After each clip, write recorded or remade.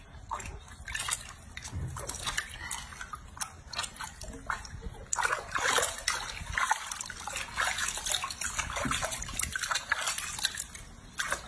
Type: recorded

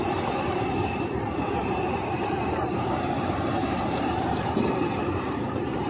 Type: remade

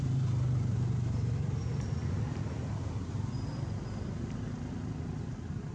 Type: recorded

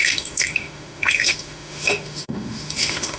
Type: remade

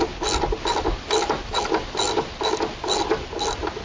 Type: recorded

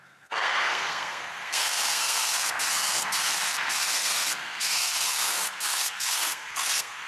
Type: remade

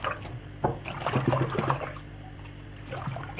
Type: recorded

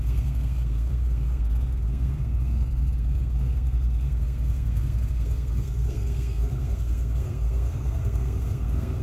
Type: remade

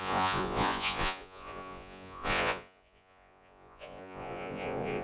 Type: remade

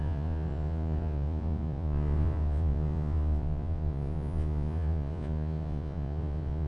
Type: remade